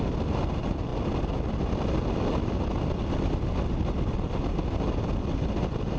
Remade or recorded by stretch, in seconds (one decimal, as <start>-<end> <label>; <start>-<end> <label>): 0.0-6.0 recorded